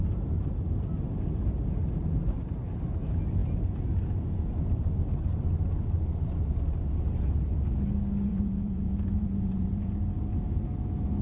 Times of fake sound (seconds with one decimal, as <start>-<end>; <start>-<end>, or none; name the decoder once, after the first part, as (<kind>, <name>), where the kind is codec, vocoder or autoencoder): 8.3-9.9 (vocoder, Vocos)